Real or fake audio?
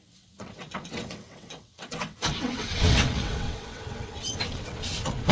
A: fake